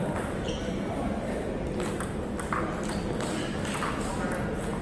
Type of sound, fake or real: real